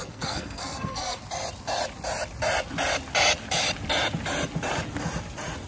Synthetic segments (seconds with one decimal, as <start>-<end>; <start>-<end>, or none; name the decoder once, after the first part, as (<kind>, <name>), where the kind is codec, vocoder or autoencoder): 0.0-1.2 (codec, SNAC)